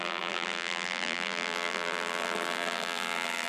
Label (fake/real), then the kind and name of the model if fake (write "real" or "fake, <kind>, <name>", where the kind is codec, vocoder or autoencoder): fake, vocoder, BigVGAN v2